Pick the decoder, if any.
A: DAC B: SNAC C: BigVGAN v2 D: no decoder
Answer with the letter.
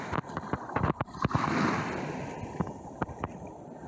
D